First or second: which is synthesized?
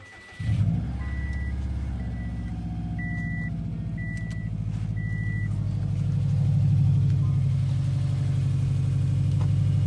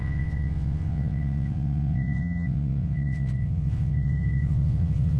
second